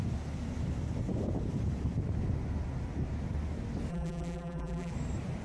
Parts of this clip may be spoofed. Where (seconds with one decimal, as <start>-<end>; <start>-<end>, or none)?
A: 3.9-4.9